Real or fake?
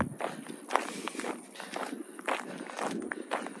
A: real